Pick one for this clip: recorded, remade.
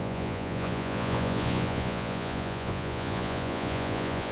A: remade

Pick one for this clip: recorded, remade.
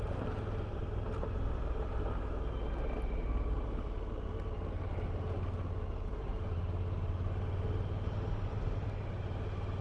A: recorded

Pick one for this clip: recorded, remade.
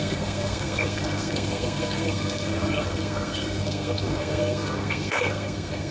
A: remade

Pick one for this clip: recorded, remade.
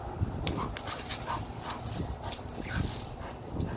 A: recorded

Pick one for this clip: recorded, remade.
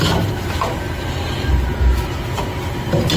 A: recorded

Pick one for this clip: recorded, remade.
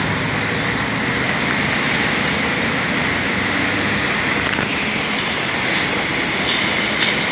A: recorded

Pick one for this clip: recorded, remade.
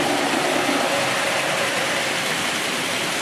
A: recorded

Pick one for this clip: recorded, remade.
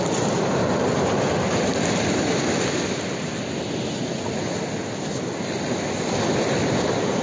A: recorded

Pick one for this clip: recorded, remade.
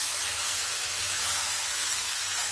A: remade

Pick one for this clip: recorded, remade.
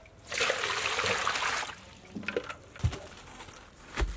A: recorded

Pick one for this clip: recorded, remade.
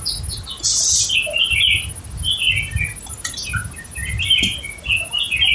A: recorded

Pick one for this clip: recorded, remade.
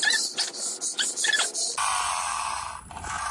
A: recorded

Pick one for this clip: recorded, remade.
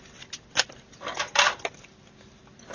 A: recorded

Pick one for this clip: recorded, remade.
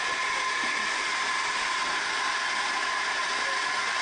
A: recorded